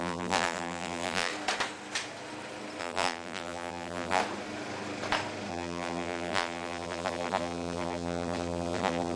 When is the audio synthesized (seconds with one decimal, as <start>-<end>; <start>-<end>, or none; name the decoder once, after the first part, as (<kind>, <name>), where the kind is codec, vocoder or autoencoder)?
0.0-1.3 (vocoder, BigVGAN v2); 2.8-4.2; 5.5-9.2